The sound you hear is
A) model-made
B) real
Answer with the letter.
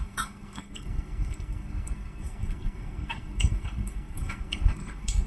A